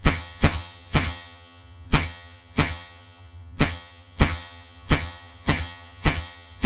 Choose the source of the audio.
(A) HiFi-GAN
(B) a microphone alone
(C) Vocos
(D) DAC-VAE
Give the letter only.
A